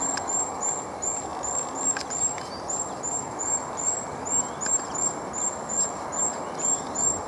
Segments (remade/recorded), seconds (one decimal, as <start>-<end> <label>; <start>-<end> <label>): 0.0-7.3 recorded